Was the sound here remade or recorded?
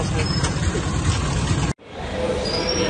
recorded